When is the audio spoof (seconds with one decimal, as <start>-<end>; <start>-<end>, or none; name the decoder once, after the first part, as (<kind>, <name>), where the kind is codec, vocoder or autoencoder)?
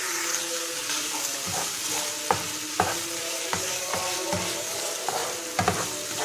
0.0-1.8 (codec, DAC); 3.2-3.9; 4.6-5.2